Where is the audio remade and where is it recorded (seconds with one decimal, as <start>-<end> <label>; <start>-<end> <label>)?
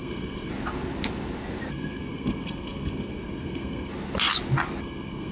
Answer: 0.0-0.5 remade; 0.5-1.7 recorded; 1.7-3.9 remade; 3.9-4.8 recorded; 4.8-5.3 remade